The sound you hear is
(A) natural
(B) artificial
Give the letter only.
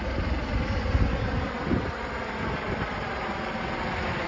A